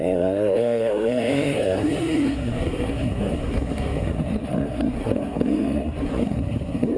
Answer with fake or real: fake